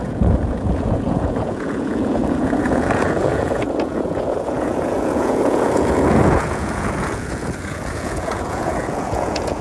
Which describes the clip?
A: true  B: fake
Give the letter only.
B